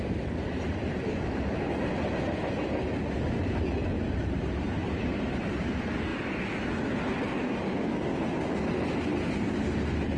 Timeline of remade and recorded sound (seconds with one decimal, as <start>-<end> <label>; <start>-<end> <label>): 0.0-10.2 recorded